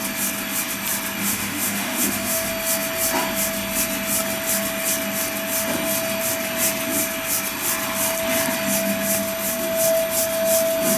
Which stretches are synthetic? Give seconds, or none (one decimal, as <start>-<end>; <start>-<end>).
1.2-2.5